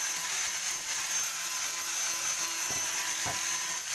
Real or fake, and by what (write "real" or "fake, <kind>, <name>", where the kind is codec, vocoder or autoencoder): real